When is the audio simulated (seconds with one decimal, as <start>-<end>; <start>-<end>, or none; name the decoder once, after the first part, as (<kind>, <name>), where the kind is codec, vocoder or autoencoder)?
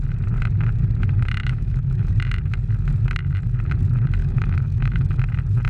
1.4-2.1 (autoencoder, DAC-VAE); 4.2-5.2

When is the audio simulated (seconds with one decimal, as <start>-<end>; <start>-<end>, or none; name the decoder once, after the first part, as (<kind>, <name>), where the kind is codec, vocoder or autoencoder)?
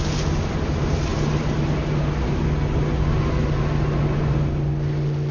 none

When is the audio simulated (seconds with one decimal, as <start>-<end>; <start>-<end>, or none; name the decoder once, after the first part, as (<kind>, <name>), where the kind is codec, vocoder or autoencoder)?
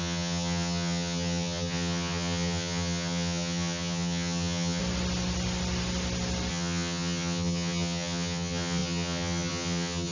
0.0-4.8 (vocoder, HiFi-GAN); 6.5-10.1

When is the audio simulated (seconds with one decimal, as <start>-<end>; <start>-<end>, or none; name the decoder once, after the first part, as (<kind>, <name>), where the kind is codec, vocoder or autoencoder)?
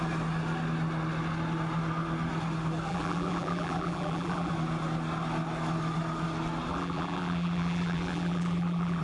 2.9-4.5 (vocoder, BigVGAN v2); 6.7-9.0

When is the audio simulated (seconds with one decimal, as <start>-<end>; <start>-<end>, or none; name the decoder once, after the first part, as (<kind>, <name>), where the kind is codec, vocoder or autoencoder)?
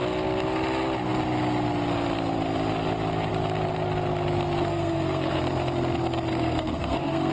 4.7-5.4 (codec, SNAC); 6.3-7.3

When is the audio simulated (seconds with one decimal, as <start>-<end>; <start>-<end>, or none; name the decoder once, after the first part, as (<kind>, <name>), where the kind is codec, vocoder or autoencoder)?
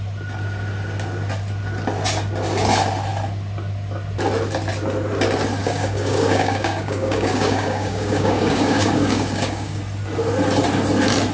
5.6-9.8 (codec, DAC)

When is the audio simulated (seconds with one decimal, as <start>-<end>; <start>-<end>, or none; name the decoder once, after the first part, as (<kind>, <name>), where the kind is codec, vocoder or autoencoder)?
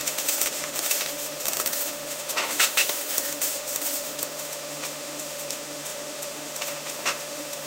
0.0-7.7 (autoencoder, DAC-VAE)